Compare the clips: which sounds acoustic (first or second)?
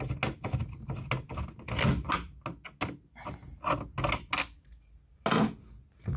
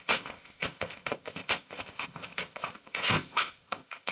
first